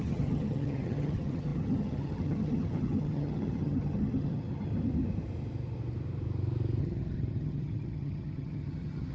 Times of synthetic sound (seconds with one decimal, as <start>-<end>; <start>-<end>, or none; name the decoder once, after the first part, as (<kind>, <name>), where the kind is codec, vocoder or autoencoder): 0.0-4.7 (vocoder, HiFi-GAN); 6.8-9.1